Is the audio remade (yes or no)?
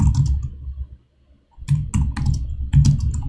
no